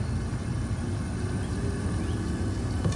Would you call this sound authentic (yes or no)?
yes